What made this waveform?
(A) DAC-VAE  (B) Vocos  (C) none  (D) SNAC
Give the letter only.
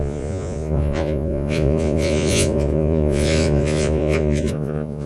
B